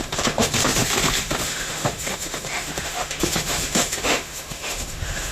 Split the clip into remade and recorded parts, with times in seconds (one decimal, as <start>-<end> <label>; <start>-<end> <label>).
0.0-5.3 remade